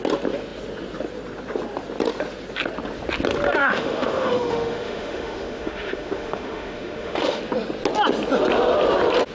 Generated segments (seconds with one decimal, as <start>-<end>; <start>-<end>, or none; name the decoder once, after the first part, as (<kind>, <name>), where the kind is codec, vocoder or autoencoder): 3.6-7.4 (autoencoder, DAC-VAE)